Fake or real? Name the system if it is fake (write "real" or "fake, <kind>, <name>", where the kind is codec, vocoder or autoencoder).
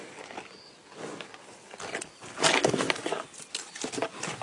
real